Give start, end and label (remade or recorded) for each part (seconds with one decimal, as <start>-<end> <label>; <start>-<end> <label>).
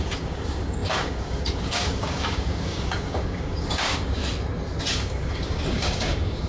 0.0-4.2 remade; 4.2-4.9 recorded; 4.9-6.5 remade